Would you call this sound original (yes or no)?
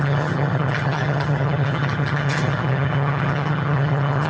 no